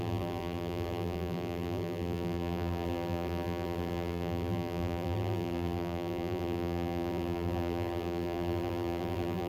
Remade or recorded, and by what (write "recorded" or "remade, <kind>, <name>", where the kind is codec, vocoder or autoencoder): remade, vocoder, BigVGAN v2